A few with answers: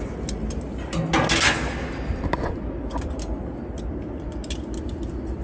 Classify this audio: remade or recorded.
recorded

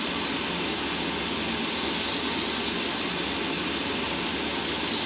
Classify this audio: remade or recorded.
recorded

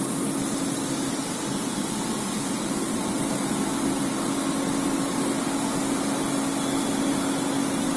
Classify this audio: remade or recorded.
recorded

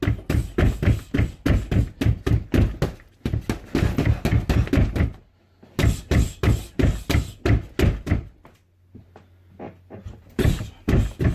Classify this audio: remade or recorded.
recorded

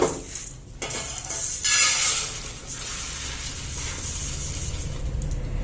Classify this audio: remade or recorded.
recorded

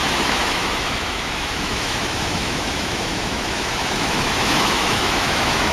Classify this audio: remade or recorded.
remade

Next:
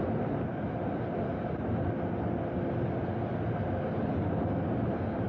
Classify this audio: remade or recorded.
recorded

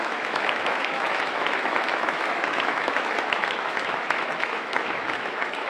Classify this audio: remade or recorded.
remade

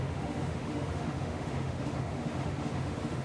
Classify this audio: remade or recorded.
remade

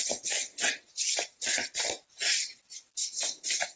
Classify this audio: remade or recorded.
recorded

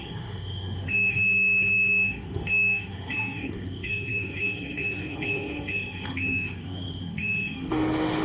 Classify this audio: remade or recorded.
remade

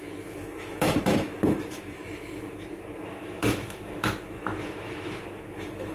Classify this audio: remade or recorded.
remade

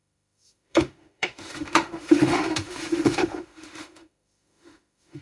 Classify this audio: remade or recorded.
remade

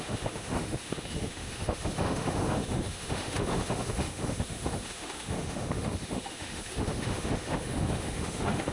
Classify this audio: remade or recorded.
remade